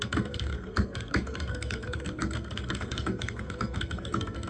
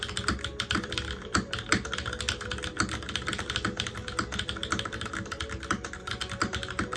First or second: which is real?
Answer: second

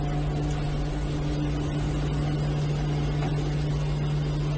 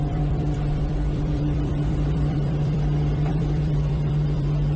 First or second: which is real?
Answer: first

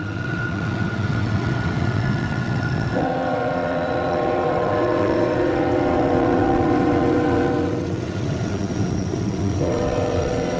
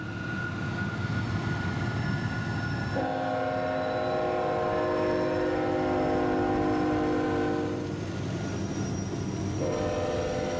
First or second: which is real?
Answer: second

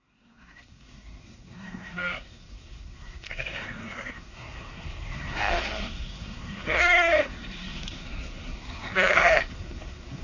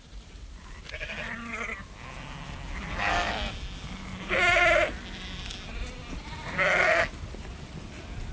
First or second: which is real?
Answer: second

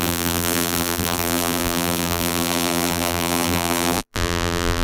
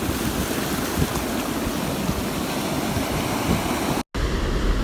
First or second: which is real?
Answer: second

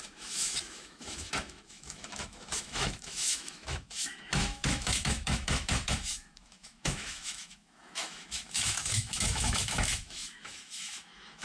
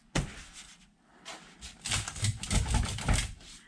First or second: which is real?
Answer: second